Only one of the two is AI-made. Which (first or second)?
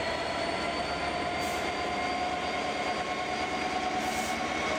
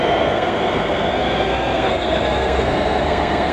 second